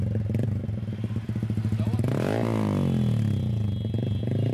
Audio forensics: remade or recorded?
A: recorded